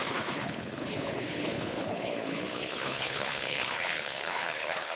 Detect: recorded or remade remade